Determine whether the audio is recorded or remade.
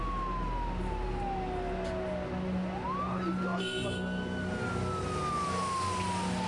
recorded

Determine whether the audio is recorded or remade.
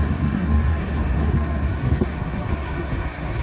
remade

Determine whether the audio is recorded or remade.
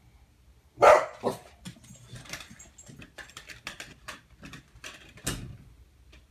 recorded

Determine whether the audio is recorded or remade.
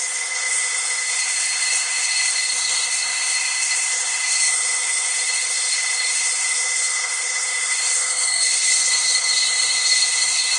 remade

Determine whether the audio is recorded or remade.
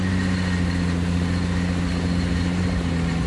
recorded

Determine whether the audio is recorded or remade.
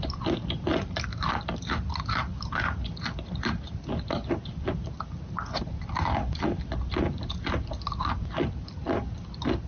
recorded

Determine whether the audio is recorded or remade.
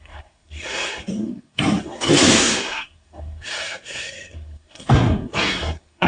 remade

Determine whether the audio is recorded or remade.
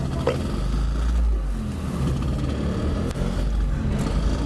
recorded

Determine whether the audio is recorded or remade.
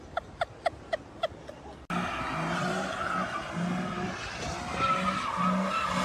recorded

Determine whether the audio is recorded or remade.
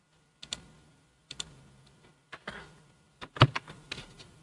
recorded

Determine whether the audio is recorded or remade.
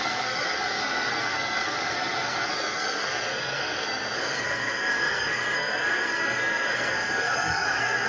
remade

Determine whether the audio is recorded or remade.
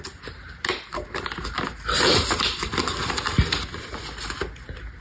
recorded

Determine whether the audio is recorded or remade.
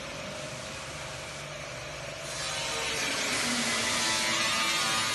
recorded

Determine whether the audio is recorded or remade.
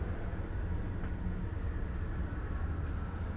recorded